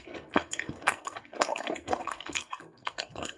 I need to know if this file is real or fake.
fake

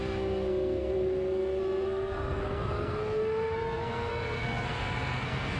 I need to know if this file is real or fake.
fake